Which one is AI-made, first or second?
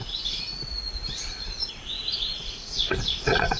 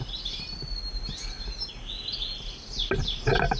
first